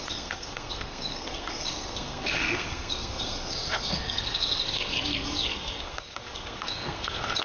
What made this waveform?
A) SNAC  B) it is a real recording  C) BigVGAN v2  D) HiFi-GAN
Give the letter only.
A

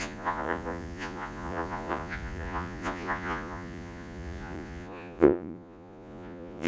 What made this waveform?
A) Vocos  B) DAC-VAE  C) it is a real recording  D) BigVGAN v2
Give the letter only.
A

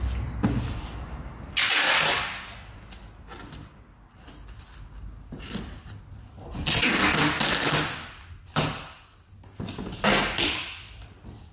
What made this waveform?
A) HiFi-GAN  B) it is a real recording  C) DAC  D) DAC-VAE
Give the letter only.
B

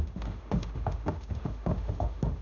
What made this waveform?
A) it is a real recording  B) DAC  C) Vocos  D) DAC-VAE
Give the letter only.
D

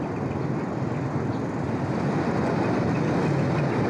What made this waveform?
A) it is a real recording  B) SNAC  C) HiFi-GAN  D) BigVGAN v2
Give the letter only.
A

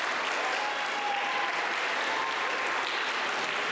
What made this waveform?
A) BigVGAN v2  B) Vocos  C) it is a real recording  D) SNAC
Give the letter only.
C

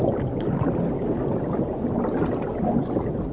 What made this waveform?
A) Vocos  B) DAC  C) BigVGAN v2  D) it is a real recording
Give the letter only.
D